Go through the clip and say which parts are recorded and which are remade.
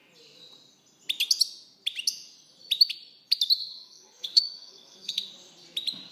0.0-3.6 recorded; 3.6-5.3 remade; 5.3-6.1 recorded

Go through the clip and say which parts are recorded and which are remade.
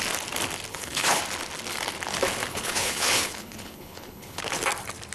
0.0-0.7 recorded; 0.7-1.2 remade; 1.2-2.5 recorded; 2.5-4.4 remade; 4.4-5.1 recorded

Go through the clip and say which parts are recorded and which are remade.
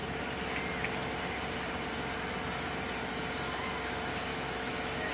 0.0-4.3 recorded; 4.3-5.1 remade